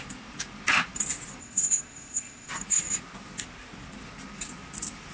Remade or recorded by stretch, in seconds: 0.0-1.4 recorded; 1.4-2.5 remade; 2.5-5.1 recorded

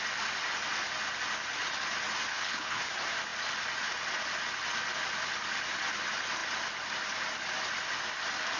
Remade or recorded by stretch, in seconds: 0.0-2.3 recorded; 2.3-2.9 remade; 2.9-8.6 recorded

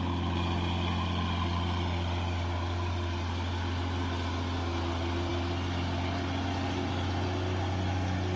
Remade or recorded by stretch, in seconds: 0.0-8.4 recorded

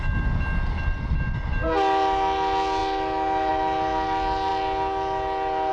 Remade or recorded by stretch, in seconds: 0.0-5.7 recorded

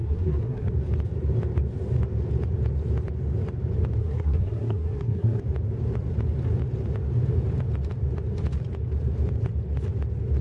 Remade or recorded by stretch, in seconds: 0.0-0.7 remade; 0.7-4.0 recorded; 4.0-5.4 remade; 5.4-10.4 recorded